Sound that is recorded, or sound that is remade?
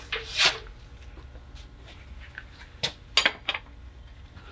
recorded